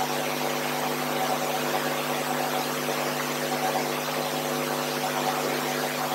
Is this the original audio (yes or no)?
yes